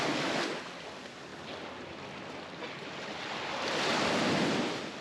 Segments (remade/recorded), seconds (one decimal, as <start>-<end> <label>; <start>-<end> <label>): 0.0-5.0 recorded

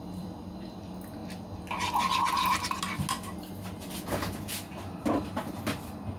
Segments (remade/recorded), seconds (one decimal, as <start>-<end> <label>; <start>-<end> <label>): 0.0-1.2 remade; 1.2-4.9 recorded; 4.9-6.2 remade

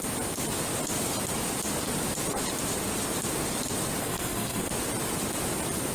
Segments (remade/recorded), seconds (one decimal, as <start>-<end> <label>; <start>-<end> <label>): 0.0-4.0 recorded; 4.0-4.7 remade; 4.7-5.9 recorded